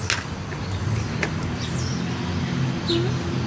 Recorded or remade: recorded